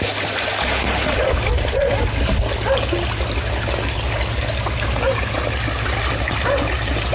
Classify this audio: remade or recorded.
recorded